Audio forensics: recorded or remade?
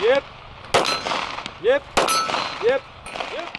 recorded